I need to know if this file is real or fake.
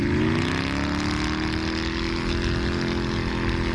real